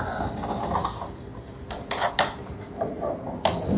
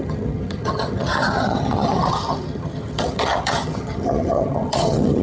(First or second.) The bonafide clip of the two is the first